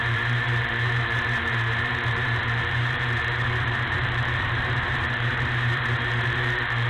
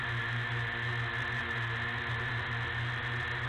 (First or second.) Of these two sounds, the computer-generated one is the first